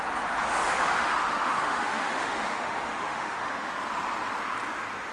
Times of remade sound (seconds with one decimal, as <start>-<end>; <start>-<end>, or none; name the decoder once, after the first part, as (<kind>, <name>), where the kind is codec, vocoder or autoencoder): 0.6-3.7 (autoencoder, DAC-VAE)